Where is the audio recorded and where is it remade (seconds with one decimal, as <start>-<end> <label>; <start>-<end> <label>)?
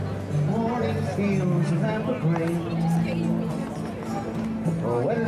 0.0-5.3 recorded